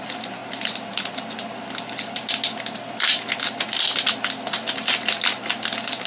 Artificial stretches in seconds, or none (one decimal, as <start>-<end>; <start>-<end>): none